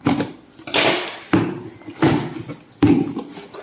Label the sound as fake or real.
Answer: fake